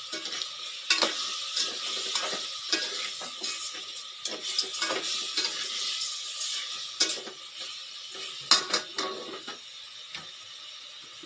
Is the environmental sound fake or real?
real